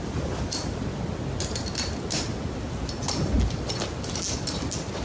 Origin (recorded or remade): recorded